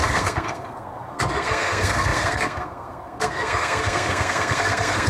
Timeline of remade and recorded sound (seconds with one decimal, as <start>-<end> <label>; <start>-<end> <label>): 0.0-5.1 remade